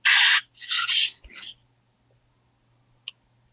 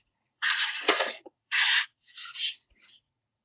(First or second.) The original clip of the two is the first